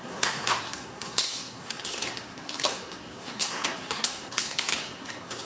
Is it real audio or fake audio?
fake